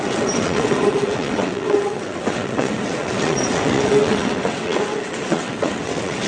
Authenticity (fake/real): fake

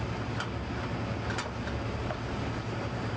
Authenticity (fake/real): real